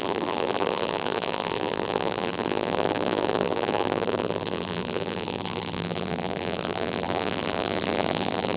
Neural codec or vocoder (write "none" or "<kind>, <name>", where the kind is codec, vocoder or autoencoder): vocoder, BigVGAN v2